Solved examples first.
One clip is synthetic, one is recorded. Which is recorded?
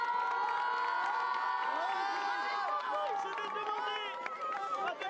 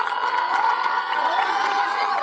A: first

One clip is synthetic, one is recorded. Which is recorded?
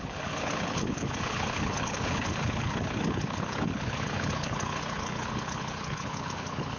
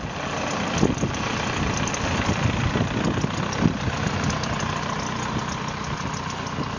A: second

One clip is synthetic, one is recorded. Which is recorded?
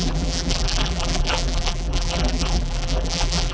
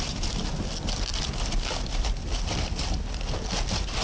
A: second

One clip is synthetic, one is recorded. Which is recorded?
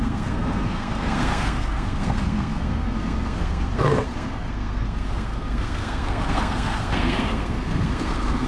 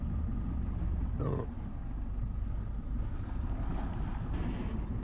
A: second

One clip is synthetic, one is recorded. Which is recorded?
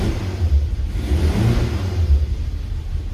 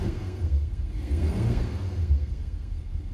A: first